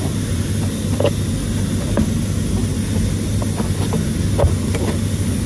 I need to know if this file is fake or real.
real